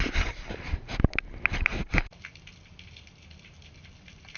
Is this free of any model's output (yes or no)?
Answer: yes